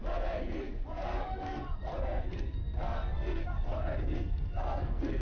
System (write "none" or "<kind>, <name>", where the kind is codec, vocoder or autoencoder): codec, SNAC